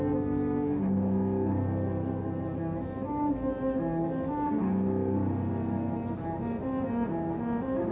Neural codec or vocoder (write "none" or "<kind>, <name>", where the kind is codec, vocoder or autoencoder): none